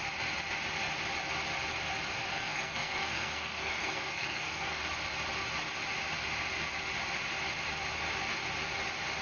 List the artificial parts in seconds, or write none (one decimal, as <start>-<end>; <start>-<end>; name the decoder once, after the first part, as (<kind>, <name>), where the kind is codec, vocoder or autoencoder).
2.3-4.8 (codec, SNAC)